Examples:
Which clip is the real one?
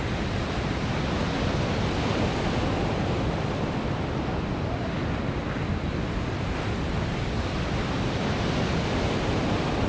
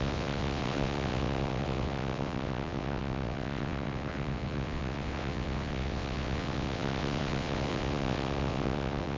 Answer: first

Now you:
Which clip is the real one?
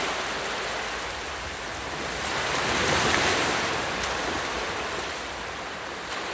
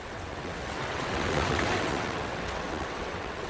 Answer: first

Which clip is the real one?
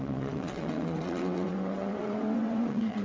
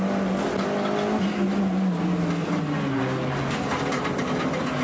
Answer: second